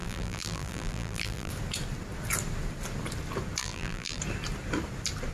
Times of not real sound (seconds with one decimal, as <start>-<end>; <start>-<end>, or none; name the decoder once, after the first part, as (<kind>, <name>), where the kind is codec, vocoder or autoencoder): 0.0-1.5 (vocoder, BigVGAN v2); 3.6-4.2